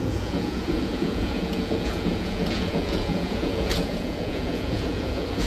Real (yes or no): no